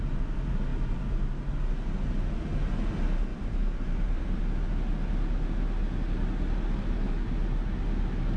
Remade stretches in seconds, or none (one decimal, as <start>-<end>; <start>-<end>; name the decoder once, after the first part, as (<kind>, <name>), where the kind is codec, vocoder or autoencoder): 3.3-4.4 (vocoder, BigVGAN v2)